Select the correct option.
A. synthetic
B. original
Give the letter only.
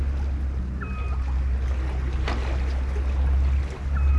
B